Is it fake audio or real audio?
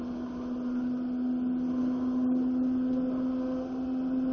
real